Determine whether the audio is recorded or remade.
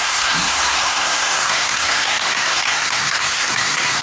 remade